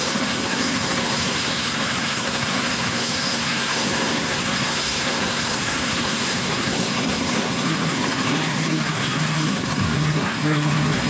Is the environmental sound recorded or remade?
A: remade